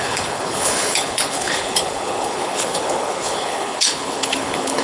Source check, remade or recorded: remade